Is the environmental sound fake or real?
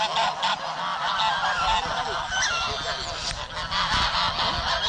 real